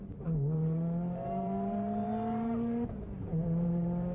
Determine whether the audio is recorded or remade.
remade